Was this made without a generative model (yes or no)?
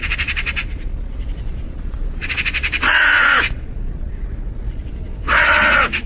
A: no